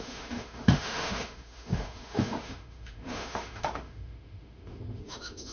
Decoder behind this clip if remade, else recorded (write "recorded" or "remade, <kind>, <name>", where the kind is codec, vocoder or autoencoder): remade, autoencoder, DAC-VAE